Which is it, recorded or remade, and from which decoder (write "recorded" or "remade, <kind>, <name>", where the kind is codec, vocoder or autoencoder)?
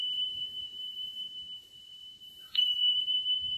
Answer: remade, vocoder, BigVGAN v2